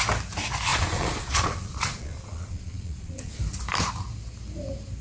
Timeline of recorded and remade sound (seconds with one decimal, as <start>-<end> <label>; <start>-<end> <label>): 0.0-0.7 recorded; 0.7-3.4 remade; 3.4-5.0 recorded